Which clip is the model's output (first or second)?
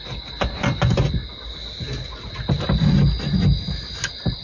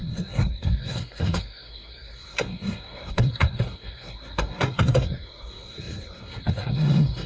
second